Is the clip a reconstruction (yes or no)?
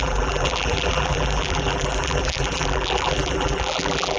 yes